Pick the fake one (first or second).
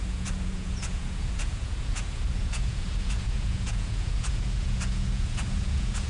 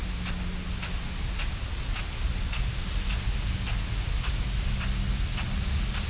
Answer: first